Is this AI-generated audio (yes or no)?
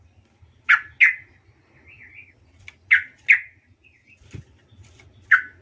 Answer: no